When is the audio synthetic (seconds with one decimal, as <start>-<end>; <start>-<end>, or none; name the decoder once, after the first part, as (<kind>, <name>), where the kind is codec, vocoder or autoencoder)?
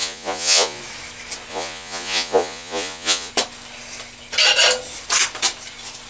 0.0-0.8 (vocoder, Vocos); 1.5-3.3